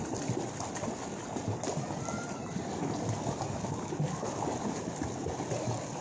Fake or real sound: real